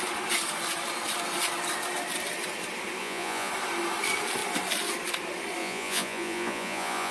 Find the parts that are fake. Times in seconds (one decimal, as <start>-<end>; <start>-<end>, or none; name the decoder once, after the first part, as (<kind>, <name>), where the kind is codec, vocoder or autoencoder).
3.0-3.5 (vocoder, Vocos); 5.6-7.1